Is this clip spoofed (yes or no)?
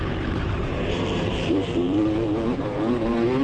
yes